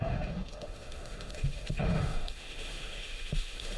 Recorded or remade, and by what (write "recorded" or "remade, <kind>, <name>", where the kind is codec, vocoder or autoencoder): remade, autoencoder, DAC-VAE